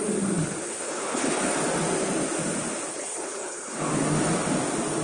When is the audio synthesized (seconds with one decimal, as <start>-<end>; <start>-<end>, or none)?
0.6-1.4; 2.9-3.8